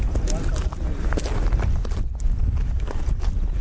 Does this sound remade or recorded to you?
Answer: recorded